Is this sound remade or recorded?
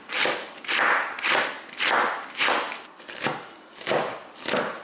recorded